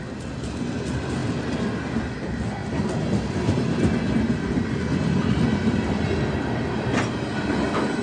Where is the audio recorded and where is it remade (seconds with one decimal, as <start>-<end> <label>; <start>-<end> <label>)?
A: 0.0-8.0 recorded